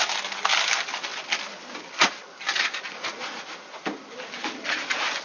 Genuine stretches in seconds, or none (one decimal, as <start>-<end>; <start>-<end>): 0.0-5.2